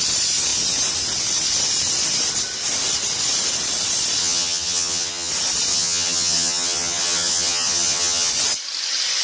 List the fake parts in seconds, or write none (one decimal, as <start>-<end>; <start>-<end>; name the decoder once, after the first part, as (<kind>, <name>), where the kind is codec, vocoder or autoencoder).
4.2-5.3 (vocoder, HiFi-GAN); 5.7-8.3